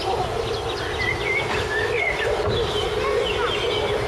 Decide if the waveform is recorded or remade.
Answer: recorded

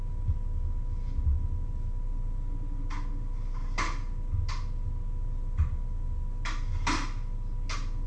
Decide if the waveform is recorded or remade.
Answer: recorded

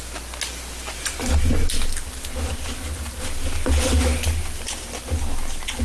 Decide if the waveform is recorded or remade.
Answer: recorded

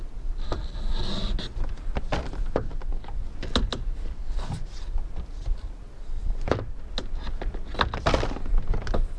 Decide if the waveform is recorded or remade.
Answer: recorded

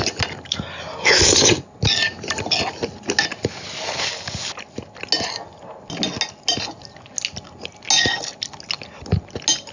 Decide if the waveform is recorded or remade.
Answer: recorded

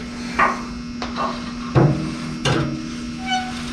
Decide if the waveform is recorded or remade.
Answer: recorded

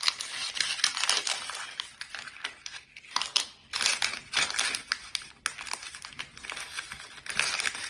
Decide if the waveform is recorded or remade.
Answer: recorded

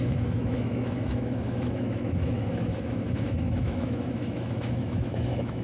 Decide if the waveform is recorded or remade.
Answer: remade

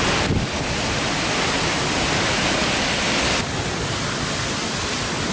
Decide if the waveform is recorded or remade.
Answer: recorded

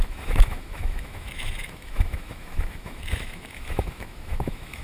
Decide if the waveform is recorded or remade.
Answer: remade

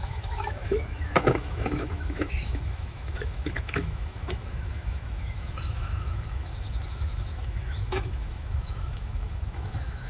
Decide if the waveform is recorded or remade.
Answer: remade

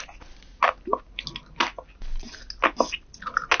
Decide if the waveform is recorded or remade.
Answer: recorded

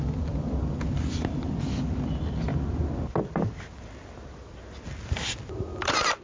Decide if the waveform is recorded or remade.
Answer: recorded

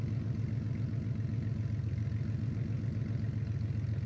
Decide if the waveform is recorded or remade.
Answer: recorded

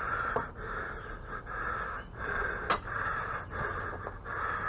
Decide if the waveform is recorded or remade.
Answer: recorded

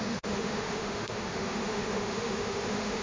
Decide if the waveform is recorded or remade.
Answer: remade